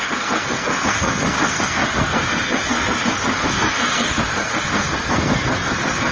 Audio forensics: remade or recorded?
remade